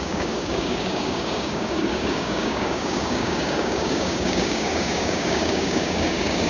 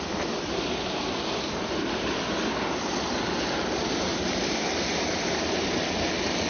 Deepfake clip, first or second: first